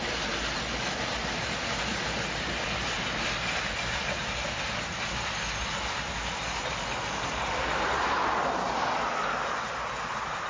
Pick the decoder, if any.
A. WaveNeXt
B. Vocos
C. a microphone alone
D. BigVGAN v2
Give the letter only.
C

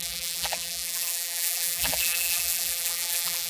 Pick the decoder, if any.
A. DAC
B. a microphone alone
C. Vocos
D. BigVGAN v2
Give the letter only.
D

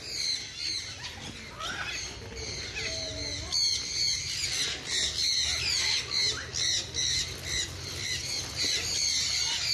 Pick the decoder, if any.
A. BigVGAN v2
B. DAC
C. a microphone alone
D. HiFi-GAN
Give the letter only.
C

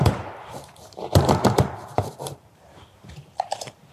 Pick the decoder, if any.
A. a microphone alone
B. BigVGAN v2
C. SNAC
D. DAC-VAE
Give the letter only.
B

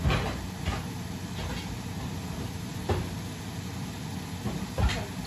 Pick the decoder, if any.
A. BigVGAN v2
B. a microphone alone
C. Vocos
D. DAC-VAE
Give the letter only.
B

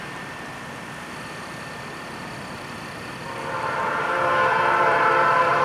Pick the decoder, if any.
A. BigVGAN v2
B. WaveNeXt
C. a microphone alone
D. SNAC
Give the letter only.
A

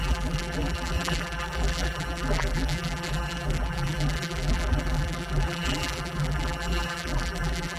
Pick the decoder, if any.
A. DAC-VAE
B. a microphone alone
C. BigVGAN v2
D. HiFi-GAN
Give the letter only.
C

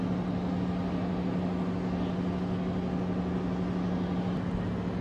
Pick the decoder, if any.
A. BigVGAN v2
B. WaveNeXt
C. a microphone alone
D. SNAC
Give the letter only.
C